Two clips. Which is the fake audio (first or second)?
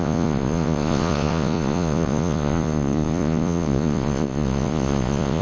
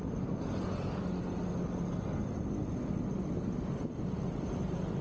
first